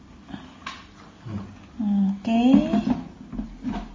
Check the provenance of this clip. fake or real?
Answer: real